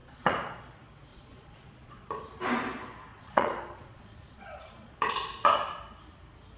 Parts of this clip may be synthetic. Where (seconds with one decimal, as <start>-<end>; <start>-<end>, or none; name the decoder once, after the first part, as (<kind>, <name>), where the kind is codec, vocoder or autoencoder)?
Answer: 0.0-0.6 (vocoder, Vocos); 1.1-2.2; 3.1-5.1